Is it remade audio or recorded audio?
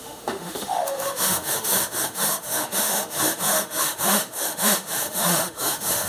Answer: remade